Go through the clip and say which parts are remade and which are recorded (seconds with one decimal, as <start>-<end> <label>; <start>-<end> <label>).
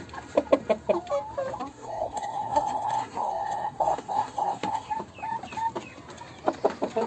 0.0-1.7 recorded; 1.7-4.9 remade; 4.9-7.1 recorded